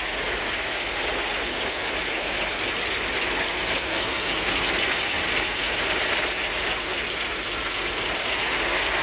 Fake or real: real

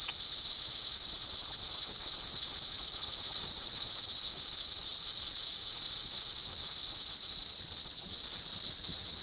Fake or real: real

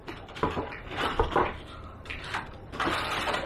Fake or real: fake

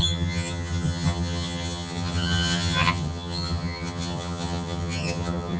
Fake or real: fake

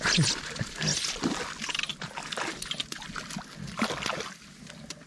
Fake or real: real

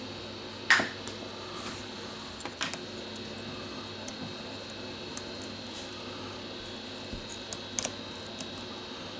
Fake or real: real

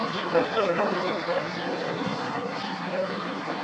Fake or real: fake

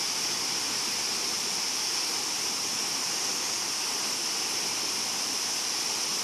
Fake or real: real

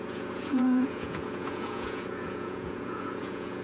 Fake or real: fake